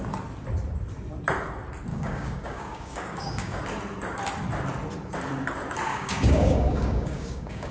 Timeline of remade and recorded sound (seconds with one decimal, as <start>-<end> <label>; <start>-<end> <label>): 0.0-1.9 recorded; 1.9-3.6 remade; 3.6-5.9 recorded; 5.9-7.7 remade